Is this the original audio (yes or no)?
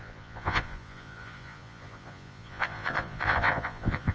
no